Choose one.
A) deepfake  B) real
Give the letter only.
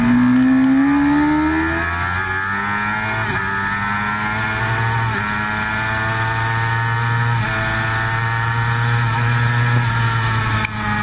B